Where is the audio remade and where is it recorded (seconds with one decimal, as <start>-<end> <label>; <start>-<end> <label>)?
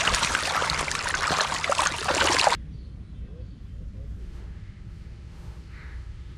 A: 0.0-4.2 recorded; 4.2-6.4 remade